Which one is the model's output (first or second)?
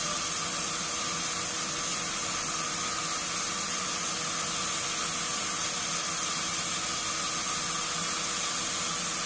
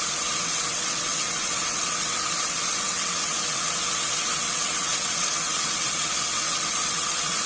second